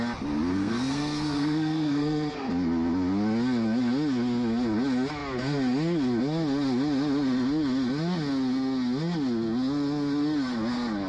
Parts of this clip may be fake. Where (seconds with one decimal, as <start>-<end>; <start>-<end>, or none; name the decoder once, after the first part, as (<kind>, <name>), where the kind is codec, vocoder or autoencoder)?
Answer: 0.5-2.5 (codec, SNAC)